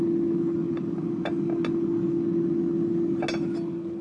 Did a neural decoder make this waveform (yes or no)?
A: no